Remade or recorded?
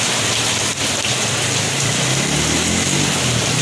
recorded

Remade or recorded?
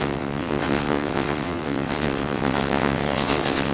remade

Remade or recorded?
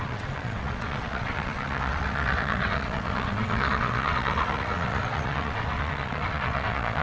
remade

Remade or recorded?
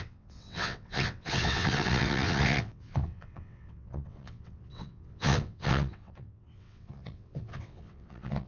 remade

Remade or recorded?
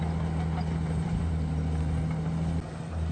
recorded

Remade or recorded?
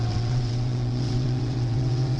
remade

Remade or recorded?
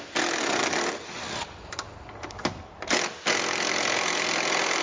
recorded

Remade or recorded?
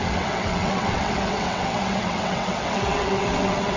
remade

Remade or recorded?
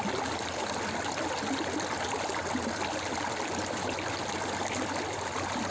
recorded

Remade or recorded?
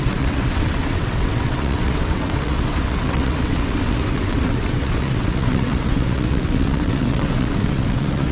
remade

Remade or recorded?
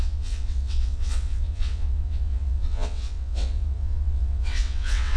remade